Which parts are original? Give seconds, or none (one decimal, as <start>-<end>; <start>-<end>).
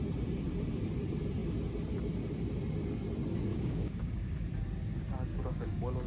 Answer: 0.0-3.5; 4.4-5.3